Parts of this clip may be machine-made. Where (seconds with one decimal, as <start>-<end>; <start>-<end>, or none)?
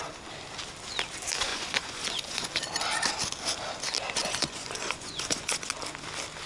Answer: 1.5-2.5; 4.2-5.7